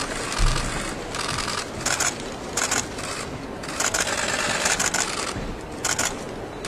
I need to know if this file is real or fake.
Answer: real